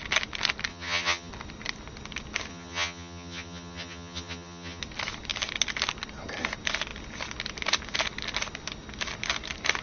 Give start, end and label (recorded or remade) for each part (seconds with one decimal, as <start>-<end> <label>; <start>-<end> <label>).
0.0-0.7 recorded; 0.7-1.3 remade; 1.3-2.5 recorded; 2.5-4.8 remade; 4.8-9.8 recorded